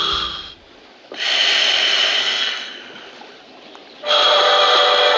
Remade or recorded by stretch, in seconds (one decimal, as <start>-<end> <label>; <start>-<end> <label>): 0.0-2.2 recorded; 2.2-2.7 remade; 2.7-5.2 recorded